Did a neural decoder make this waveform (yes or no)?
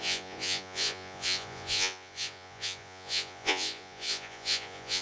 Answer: yes